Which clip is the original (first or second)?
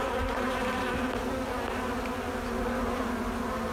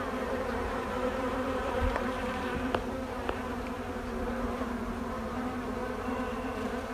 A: first